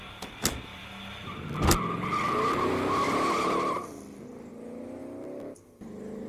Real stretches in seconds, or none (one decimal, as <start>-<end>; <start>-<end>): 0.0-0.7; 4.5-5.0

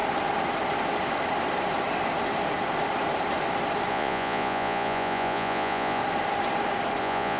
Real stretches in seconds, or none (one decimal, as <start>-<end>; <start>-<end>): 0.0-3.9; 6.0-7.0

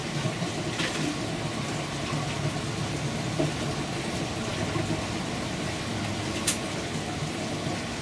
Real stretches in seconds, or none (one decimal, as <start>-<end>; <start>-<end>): 0.0-8.0

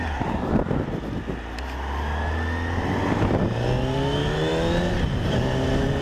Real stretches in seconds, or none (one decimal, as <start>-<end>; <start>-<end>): 0.0-6.0

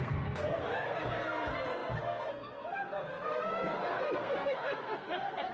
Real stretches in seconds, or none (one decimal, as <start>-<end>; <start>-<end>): none